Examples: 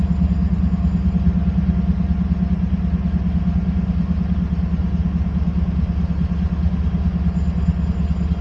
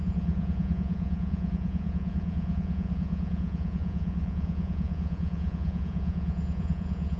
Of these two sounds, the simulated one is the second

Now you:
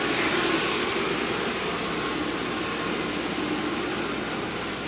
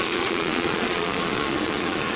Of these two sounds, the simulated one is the second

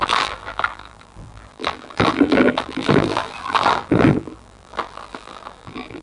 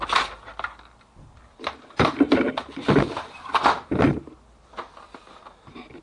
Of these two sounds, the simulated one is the first